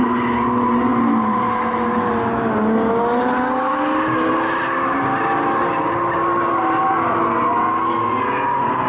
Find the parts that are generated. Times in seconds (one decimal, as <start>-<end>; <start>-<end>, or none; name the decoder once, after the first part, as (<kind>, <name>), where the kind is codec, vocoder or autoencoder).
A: none